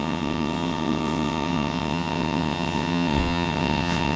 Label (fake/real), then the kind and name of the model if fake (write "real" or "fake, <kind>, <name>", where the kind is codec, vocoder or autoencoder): fake, vocoder, WaveNeXt